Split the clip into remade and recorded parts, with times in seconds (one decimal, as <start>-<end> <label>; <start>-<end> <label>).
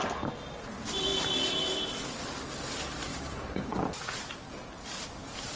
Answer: 0.0-3.1 recorded; 3.1-3.8 remade; 3.8-5.6 recorded